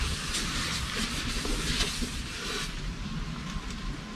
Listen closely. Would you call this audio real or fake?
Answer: real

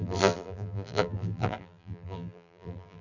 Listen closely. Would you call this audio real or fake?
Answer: fake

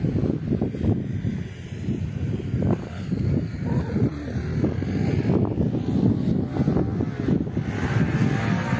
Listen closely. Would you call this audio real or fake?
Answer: real